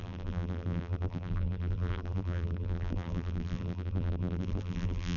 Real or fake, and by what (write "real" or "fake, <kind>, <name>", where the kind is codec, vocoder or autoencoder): fake, vocoder, BigVGAN v2